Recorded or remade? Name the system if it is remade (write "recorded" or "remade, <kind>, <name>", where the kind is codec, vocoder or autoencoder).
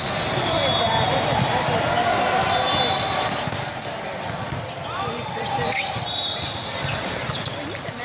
recorded